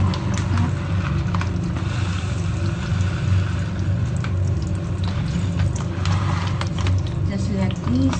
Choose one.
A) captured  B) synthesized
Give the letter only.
A